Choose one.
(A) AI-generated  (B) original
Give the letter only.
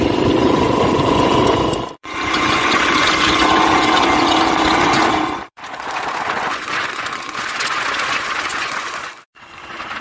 A